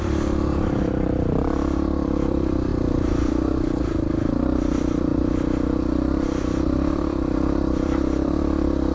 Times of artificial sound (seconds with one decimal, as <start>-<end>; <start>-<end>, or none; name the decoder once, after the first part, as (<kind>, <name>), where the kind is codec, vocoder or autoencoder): 0.0-8.9 (vocoder, BigVGAN v2)